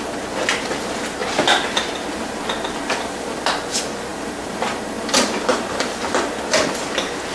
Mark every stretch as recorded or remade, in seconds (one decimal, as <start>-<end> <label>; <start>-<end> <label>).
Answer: 0.0-4.1 recorded; 4.1-4.8 remade; 4.8-5.5 recorded; 5.5-6.1 remade; 6.1-7.3 recorded